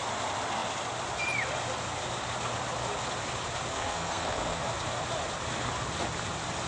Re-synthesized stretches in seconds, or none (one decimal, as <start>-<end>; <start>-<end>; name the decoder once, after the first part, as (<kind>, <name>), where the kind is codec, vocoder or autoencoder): 3.7-4.6 (codec, SNAC)

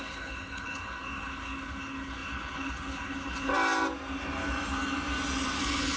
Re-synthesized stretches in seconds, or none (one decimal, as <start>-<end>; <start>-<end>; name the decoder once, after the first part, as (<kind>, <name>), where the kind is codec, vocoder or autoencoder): 0.0-3.5 (codec, HILCodec); 5.6-6.0

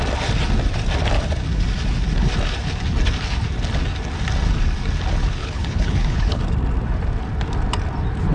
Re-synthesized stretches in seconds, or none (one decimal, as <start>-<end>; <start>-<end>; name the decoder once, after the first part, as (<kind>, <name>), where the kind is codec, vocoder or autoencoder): 5.4-6.4 (codec, HILCodec)

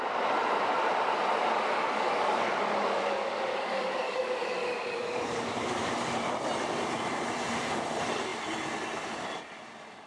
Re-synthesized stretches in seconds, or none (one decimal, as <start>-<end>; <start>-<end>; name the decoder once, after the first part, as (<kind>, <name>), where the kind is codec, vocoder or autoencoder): 1.8-6.0 (codec, DAC)

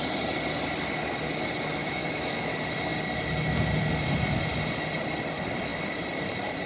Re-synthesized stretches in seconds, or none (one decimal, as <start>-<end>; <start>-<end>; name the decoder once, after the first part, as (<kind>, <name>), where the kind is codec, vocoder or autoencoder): 1.8-2.5 (autoencoder, DAC-VAE)

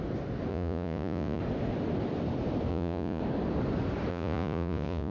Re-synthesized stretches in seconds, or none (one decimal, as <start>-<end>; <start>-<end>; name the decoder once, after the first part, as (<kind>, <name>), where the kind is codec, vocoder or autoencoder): 0.5-1.4 (vocoder, Vocos); 2.7-3.2; 4.1-5.1

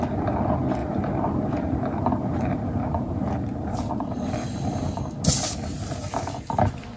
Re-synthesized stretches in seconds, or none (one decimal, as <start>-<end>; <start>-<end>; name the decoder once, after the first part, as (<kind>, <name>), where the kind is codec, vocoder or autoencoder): 0.8-5.0 (vocoder, BigVGAN v2)